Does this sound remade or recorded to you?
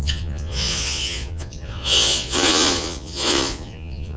remade